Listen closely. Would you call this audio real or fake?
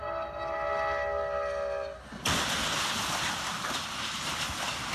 real